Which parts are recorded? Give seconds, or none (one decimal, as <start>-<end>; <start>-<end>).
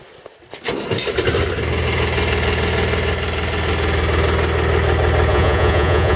0.0-5.3